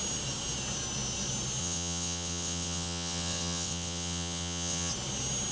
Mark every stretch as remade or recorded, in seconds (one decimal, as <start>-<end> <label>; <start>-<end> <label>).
0.0-1.6 recorded; 1.6-4.9 remade; 4.9-5.5 recorded